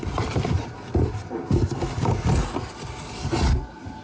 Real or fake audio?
real